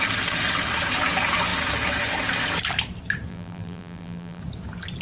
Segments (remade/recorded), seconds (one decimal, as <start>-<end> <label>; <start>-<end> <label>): 0.0-3.3 recorded; 3.3-4.4 remade; 4.4-5.0 recorded

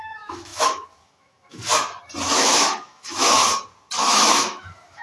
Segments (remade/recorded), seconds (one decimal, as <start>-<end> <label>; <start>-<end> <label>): 0.0-1.7 remade; 1.7-2.3 recorded; 2.3-3.4 remade; 3.4-4.0 recorded; 4.0-5.0 remade